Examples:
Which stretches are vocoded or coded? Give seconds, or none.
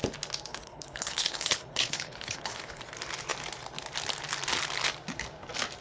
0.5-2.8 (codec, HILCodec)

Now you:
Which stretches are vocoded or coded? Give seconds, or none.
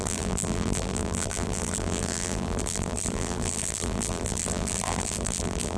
0.0-5.8 (vocoder, BigVGAN v2)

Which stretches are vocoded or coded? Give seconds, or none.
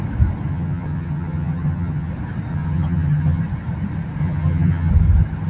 0.5-2.1 (vocoder, HiFi-GAN); 2.5-3.4; 4.2-4.9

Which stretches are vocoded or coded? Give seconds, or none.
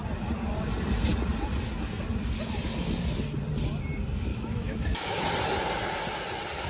4.3-5.2 (autoencoder, DAC-VAE)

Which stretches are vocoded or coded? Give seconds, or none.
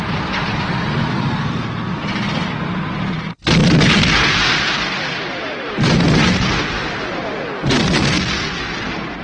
none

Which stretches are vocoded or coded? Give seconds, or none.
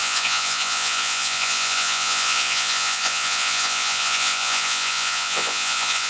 0.0-6.1 (vocoder, Vocos)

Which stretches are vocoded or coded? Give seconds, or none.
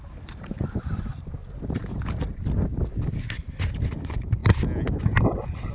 0.0-1.4 (vocoder, BigVGAN v2); 3.7-4.4; 5.0-5.7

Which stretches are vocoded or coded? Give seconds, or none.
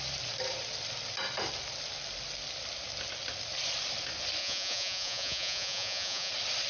4.4-6.3 (vocoder, Vocos)